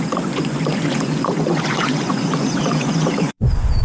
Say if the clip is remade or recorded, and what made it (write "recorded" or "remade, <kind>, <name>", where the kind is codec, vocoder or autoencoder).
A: remade, vocoder, Vocos